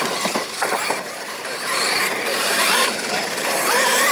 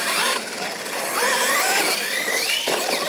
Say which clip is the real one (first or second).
second